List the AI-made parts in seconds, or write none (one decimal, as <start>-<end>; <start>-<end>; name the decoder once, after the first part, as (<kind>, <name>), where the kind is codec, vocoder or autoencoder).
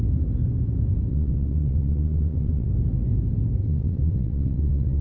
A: 1.1-2.7 (vocoder, WaveNeXt); 3.6-5.0